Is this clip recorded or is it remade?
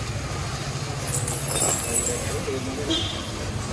recorded